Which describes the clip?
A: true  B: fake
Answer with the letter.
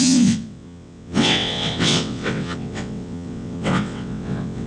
B